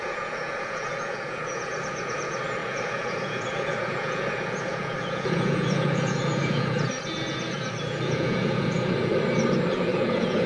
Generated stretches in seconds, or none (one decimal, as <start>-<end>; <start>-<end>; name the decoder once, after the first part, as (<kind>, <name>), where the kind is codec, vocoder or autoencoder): 0.0-9.1 (vocoder, Vocos); 9.7-10.5